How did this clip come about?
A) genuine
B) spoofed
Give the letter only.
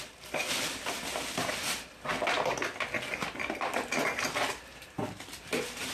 A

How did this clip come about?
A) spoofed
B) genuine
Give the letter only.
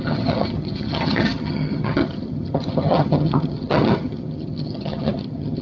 A